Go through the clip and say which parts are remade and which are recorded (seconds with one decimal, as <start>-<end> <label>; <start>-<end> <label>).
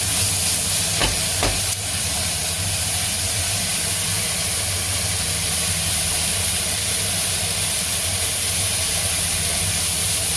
0.0-1.0 recorded; 1.0-3.9 remade; 3.9-10.4 recorded